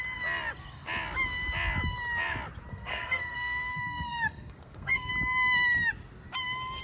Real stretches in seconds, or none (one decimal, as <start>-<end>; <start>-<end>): 0.0-2.7; 5.1-6.8